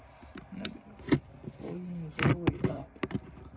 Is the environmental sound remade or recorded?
recorded